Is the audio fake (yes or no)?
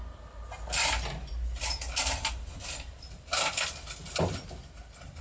no